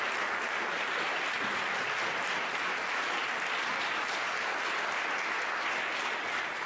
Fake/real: real